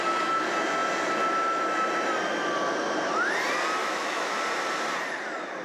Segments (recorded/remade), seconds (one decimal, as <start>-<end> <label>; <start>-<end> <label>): 0.0-3.8 recorded; 3.8-4.4 remade; 4.4-5.6 recorded